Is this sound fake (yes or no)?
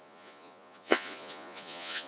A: yes